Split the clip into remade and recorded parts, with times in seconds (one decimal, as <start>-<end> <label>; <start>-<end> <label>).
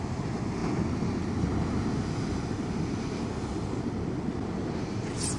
0.0-5.4 recorded